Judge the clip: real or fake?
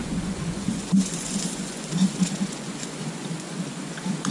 fake